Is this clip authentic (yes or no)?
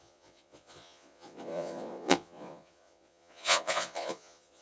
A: no